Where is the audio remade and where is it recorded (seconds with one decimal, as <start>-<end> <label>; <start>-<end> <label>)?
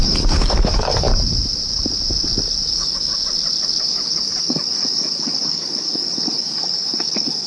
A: 0.0-1.1 remade; 1.1-2.7 recorded; 2.7-3.1 remade; 3.1-3.8 recorded; 3.8-7.5 remade